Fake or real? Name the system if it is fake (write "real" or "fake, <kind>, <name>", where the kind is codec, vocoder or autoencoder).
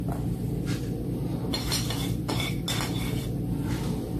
real